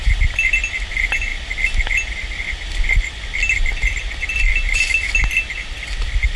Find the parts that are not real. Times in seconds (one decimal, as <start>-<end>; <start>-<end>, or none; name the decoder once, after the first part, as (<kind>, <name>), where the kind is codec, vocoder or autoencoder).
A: none